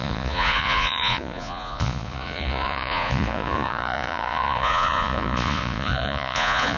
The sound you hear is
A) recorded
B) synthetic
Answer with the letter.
B